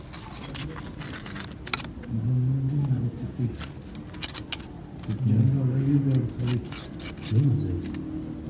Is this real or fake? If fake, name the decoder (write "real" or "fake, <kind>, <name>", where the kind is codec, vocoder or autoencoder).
real